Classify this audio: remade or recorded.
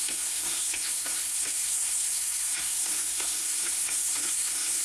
remade